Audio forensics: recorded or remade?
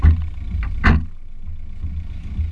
recorded